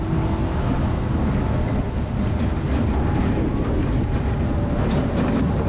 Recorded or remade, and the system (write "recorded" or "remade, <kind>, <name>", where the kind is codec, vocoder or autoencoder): recorded